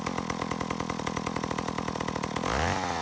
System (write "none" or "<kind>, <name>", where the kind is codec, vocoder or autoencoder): none